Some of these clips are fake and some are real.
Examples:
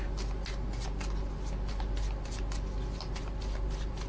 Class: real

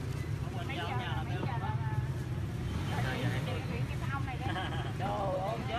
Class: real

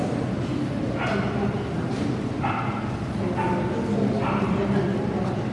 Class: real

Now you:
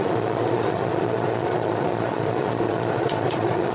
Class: fake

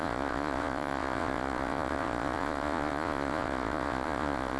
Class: fake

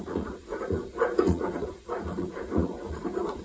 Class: fake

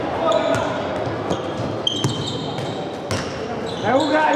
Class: real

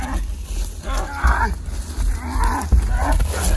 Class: real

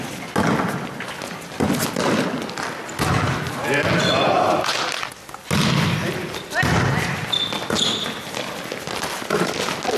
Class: real